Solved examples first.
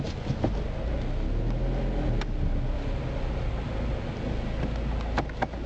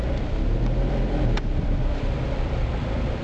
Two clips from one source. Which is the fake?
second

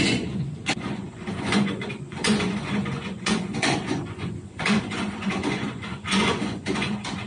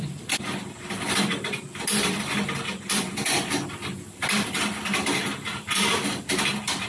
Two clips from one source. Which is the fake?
first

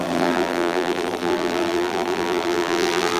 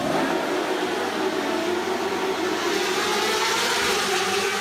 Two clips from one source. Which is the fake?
first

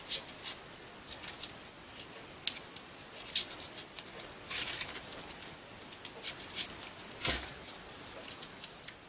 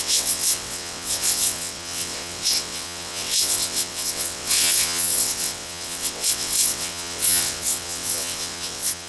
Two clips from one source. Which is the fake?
second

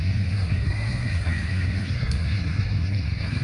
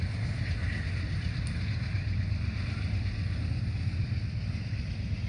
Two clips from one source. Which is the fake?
first